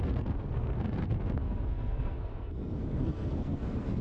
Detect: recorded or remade remade